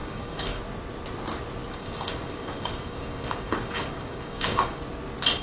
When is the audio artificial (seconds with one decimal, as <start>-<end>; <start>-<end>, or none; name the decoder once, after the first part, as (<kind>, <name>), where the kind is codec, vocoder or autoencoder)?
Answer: 0.0-0.6 (codec, DAC); 1.7-4.8